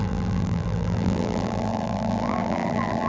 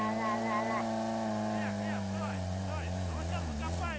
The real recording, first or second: second